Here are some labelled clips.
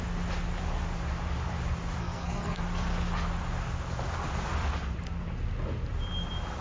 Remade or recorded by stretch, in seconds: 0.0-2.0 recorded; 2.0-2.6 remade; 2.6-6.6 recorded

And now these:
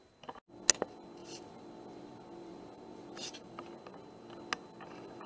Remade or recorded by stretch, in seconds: 0.0-1.2 recorded; 1.2-3.7 remade; 3.7-5.3 recorded